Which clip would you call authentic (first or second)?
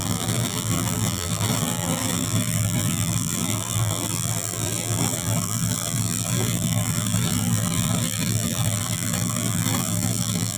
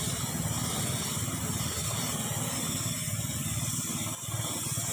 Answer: second